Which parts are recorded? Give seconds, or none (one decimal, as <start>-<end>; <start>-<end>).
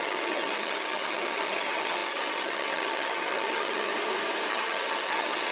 3.9-4.5